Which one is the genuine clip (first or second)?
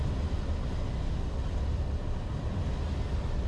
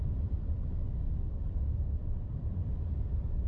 first